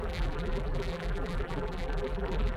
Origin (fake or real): fake